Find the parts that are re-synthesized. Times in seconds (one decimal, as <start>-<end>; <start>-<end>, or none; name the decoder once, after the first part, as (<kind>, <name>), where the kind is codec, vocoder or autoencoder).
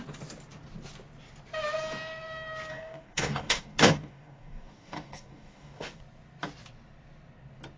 2.7-6.0 (codec, DAC)